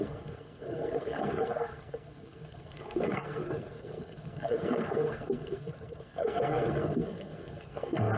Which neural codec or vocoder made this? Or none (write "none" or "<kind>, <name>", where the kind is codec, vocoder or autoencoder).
codec, SNAC